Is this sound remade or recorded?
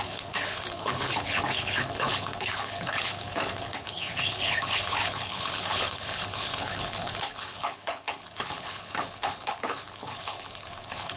remade